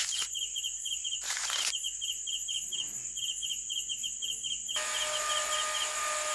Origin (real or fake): real